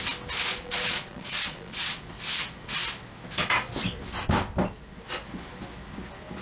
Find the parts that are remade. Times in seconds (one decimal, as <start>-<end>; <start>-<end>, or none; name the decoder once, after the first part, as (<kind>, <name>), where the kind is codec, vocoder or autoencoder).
0.5-2.0 (vocoder, Vocos)